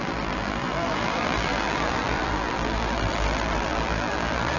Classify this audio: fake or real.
fake